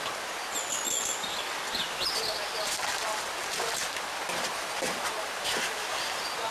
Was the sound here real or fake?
real